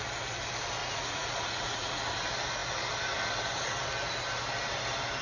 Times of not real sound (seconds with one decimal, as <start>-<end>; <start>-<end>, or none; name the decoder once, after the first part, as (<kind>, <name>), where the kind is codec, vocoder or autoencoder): 0.8-2.1 (vocoder, Vocos)